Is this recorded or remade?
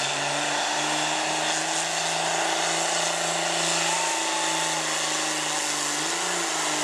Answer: recorded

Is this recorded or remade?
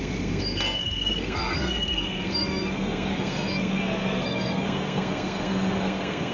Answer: remade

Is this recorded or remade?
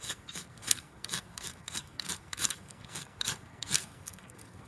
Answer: remade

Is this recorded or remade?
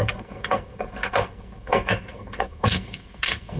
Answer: remade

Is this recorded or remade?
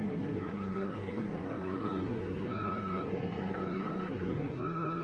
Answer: remade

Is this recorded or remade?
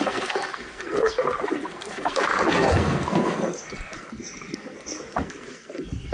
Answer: remade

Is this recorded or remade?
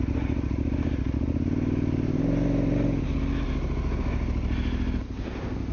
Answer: recorded